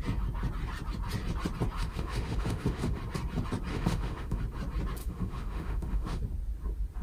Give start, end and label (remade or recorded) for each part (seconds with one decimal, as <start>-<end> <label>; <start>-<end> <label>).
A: 0.0-1.8 recorded; 1.8-3.0 remade; 3.0-3.7 recorded; 3.7-4.4 remade; 4.4-5.0 recorded; 5.0-6.2 remade; 6.2-7.0 recorded